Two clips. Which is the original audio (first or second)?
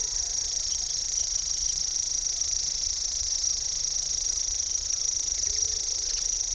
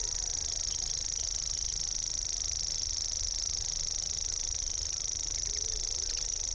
second